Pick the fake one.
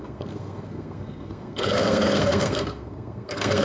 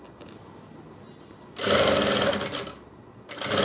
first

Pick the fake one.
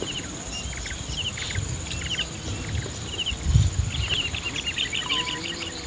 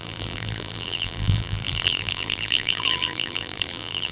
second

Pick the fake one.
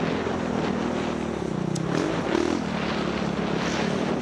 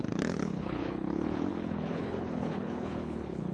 second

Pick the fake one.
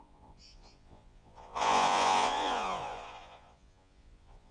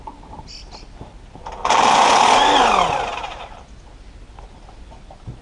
first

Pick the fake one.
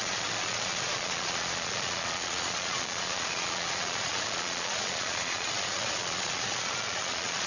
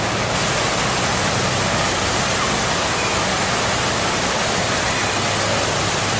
first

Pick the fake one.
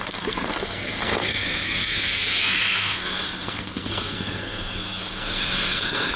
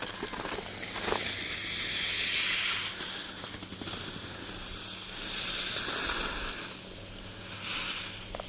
first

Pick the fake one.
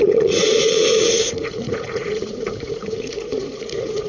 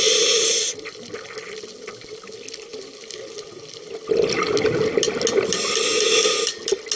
first